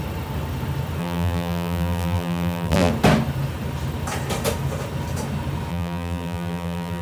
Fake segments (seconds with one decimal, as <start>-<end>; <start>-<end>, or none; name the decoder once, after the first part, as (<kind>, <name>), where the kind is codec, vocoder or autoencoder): 1.0-2.9 (vocoder, BigVGAN v2); 5.7-7.0